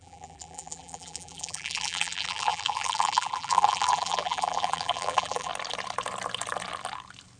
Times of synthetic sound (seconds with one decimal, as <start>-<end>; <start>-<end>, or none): 0.0-5.5